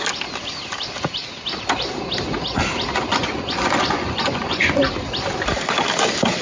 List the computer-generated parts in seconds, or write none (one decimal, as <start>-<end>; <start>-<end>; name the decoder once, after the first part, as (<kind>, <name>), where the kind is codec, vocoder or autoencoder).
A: 3.1-4.8 (vocoder, Vocos)